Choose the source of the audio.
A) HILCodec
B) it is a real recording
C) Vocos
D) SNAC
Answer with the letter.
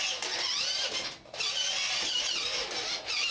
B